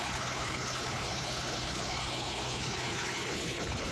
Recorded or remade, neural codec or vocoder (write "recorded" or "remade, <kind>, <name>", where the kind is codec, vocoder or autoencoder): remade, codec, HILCodec